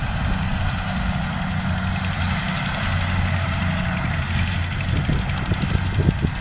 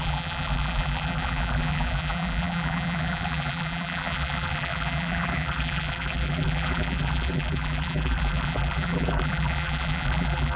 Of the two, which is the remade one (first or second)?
second